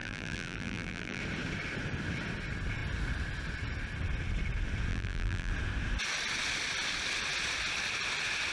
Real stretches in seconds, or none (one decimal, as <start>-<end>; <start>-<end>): 1.2-4.9; 5.5-8.5